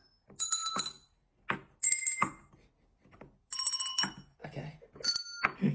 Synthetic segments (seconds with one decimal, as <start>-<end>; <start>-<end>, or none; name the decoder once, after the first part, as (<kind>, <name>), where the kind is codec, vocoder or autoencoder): none